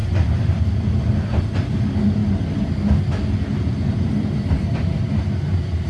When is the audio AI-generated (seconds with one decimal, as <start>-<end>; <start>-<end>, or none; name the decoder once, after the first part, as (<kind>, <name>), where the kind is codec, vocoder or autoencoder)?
none